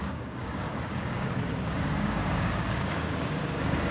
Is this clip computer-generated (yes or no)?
yes